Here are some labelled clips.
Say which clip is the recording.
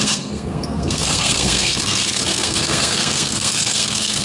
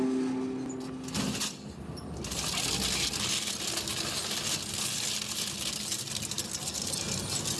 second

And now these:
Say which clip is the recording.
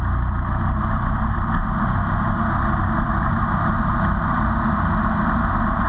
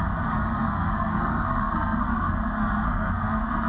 first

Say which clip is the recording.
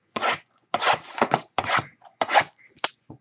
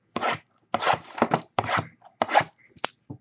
second